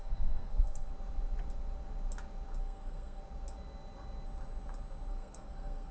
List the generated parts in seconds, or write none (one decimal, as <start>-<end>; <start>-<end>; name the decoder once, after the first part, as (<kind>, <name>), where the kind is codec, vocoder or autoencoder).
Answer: 0.0-0.9 (codec, SNAC); 2.6-3.2; 5.1-5.9